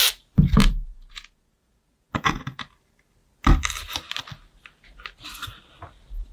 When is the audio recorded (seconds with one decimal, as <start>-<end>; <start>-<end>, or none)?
0.0-0.6; 2.6-6.3